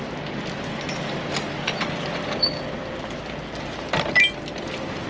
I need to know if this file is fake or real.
real